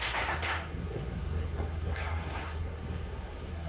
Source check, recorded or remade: remade